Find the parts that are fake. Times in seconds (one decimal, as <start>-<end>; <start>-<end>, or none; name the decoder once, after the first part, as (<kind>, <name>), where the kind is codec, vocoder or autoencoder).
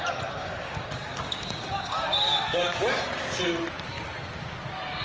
0.4-3.4 (codec, DAC)